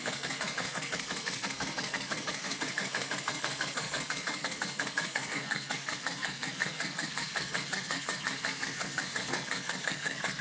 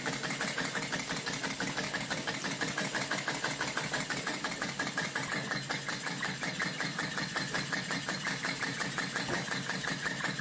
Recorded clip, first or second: second